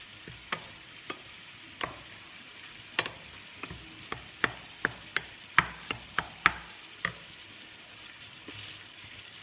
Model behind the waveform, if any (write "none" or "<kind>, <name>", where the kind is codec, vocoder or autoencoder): none